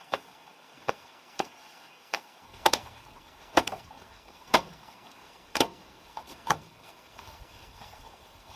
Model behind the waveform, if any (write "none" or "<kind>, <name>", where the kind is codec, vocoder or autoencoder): codec, SNAC